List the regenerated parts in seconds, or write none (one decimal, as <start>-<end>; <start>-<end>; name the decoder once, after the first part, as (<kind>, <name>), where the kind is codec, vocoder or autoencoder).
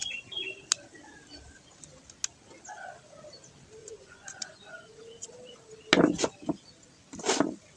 3.8-5.0 (vocoder, Vocos)